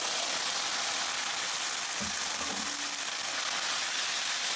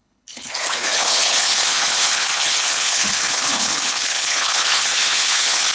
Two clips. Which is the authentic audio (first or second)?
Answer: first